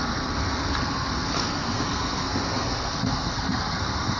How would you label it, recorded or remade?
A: remade